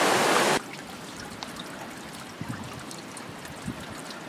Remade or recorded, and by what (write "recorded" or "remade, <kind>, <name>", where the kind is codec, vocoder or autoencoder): recorded